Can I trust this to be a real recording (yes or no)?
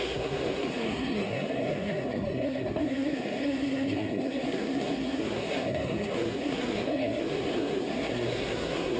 no